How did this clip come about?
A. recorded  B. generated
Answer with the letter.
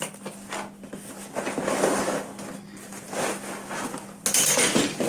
A